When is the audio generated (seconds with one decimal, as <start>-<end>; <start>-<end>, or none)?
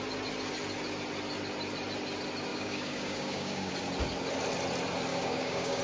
2.5-3.7; 5.1-5.8